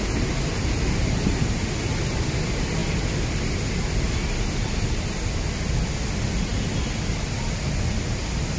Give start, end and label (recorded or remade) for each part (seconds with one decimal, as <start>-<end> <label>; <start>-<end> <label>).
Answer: 0.0-8.6 recorded